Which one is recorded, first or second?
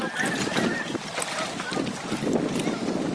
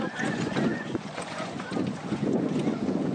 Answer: first